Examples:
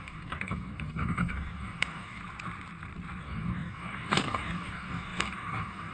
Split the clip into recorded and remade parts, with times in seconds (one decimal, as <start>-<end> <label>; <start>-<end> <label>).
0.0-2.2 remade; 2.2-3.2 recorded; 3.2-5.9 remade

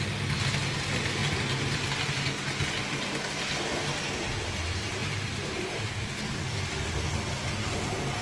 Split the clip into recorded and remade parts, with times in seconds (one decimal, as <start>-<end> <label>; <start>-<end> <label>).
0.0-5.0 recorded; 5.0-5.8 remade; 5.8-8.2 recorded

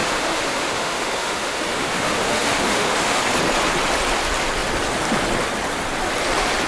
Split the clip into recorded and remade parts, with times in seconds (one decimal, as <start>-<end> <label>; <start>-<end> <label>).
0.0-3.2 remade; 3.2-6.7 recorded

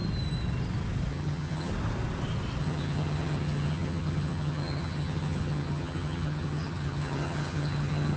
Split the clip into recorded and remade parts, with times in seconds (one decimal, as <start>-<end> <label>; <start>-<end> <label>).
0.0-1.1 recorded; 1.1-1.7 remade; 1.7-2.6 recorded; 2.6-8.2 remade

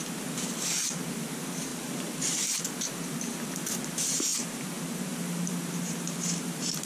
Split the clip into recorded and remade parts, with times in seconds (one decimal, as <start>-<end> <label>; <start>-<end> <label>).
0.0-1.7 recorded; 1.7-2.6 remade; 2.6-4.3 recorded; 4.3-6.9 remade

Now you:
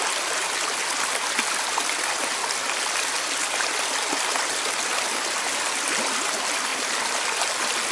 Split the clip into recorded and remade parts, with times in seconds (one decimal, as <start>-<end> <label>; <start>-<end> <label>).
0.0-7.9 recorded

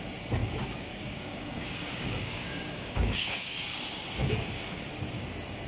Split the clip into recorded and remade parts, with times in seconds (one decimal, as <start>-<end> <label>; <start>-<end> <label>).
0.0-0.4 recorded; 0.4-3.8 remade; 3.8-4.2 recorded; 4.2-4.8 remade; 4.8-5.7 recorded